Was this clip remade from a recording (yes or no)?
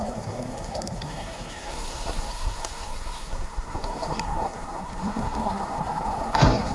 yes